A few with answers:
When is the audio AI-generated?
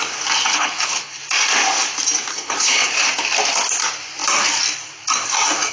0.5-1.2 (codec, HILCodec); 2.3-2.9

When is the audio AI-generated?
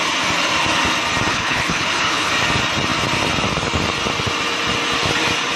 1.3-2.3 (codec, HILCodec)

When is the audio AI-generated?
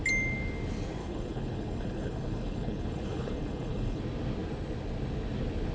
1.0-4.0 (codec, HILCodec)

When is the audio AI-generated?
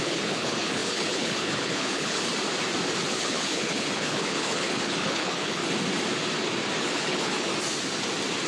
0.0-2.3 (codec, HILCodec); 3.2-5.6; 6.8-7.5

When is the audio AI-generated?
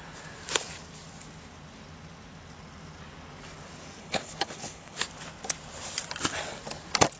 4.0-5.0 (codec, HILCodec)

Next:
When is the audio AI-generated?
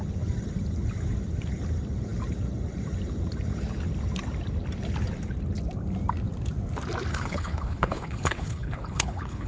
7.1-9.5 (codec, HILCodec)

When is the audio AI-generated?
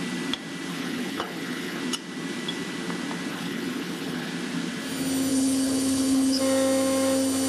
0.7-1.8 (codec, HILCodec); 3.3-4.3; 5.3-6.4